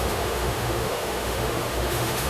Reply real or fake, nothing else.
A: fake